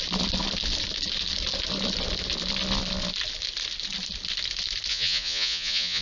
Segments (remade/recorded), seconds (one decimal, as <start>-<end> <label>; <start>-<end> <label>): 0.0-4.9 recorded; 4.9-6.0 remade